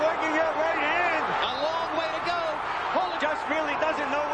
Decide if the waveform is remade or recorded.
recorded